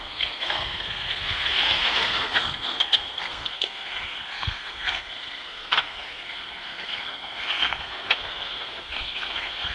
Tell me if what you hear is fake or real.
fake